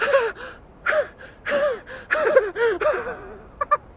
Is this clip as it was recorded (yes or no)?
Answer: yes